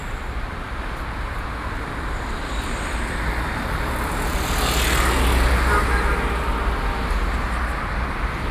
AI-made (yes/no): no